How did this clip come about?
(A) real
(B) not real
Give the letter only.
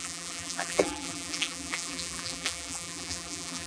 B